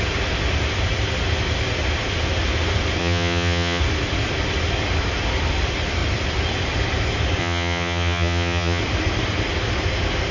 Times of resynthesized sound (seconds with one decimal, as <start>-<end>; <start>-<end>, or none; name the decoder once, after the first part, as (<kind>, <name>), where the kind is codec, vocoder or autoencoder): 3.0-3.8 (vocoder, HiFi-GAN); 7.4-8.8